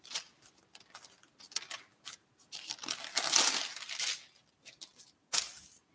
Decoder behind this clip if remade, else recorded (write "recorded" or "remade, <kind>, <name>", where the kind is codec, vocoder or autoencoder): recorded